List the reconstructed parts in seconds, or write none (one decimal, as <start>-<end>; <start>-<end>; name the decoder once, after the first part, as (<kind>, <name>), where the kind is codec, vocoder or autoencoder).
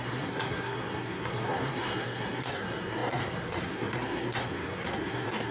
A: 0.0-5.5 (codec, SNAC)